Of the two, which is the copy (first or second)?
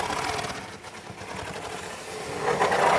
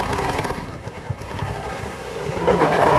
second